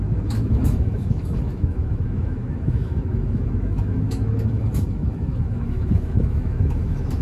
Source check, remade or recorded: remade